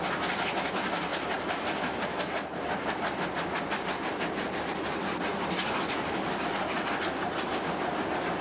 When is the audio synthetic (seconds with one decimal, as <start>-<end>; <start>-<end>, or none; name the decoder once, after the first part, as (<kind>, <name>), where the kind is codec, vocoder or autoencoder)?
none